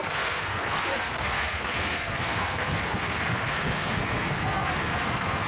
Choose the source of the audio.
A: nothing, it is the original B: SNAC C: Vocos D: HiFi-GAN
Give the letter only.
B